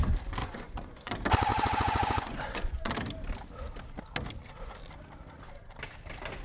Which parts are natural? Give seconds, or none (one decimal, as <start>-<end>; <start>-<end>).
0.0-0.4; 1.1-1.5; 2.9-6.4

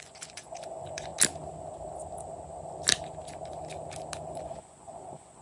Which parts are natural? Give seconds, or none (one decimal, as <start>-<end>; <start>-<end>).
1.1-4.3

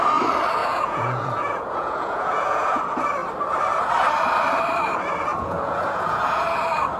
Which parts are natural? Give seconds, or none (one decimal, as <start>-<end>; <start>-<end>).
0.0-0.6; 2.8-5.3; 6.4-7.0